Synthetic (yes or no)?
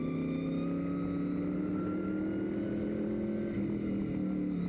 no